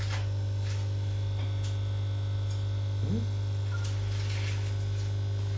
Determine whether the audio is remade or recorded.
recorded